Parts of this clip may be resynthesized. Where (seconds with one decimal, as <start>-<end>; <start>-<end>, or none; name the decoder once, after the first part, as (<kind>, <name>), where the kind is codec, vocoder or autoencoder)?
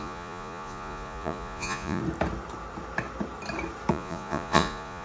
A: 0.0-2.0 (vocoder, Vocos); 3.9-5.0